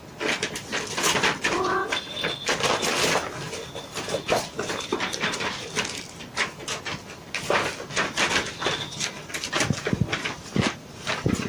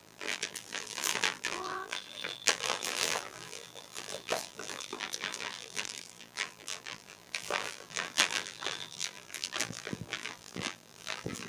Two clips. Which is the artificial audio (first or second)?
second